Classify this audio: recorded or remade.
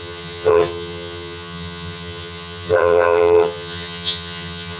remade